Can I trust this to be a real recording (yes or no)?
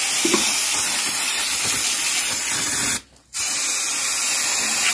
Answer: yes